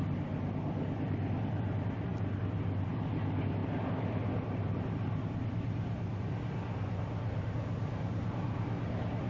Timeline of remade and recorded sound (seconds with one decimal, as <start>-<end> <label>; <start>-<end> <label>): 0.0-9.3 recorded